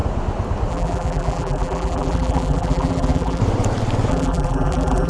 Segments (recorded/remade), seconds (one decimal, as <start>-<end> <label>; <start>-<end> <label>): 0.0-0.7 recorded; 0.7-3.4 remade; 3.4-4.1 recorded; 4.1-5.1 remade

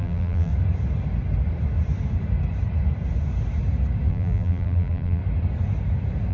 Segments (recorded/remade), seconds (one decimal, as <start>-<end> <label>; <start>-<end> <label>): 0.0-0.5 remade; 0.5-4.1 recorded; 4.1-5.2 remade; 5.2-6.3 recorded